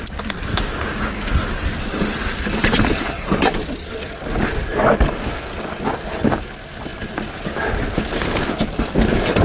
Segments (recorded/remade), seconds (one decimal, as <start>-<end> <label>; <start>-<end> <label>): 0.0-0.5 recorded; 0.5-1.3 remade; 1.3-9.4 recorded